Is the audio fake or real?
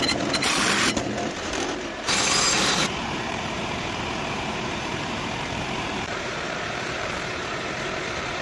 fake